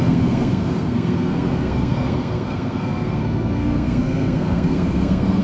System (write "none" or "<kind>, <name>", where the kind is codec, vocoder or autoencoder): codec, SNAC